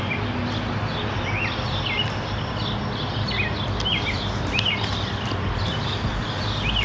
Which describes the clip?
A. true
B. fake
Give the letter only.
A